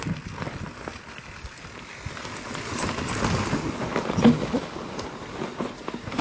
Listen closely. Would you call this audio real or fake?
real